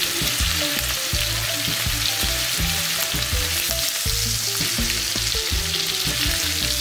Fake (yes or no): no